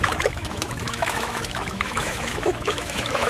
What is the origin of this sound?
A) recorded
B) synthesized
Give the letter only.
B